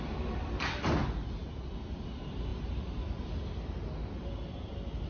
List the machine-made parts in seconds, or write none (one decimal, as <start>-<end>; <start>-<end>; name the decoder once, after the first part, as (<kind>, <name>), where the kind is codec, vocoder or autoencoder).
none